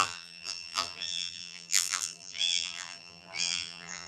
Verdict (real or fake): fake